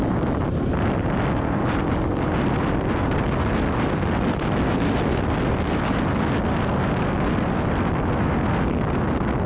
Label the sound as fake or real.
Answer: real